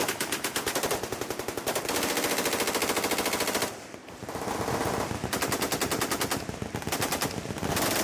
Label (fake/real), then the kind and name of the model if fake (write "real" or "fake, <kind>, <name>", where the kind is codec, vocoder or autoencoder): real